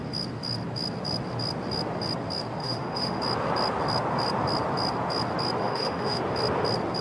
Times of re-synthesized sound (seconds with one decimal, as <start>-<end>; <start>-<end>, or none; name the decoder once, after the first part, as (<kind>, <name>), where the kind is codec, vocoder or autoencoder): 2.6-3.2 (autoencoder, DAC-VAE); 5.6-6.2